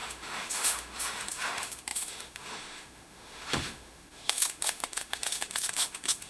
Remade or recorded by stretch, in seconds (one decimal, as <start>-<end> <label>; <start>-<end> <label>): 0.0-6.3 remade